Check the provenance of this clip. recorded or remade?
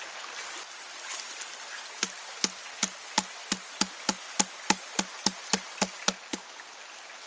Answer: recorded